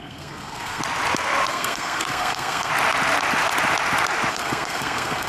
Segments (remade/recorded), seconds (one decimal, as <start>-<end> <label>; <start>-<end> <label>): 0.0-0.8 remade; 0.8-1.5 recorded; 1.5-2.7 remade; 2.7-4.3 recorded; 4.3-5.3 remade